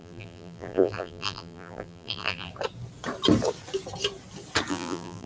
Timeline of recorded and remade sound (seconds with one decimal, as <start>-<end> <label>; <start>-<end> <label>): 0.0-2.5 remade; 2.5-4.7 recorded; 4.7-5.3 remade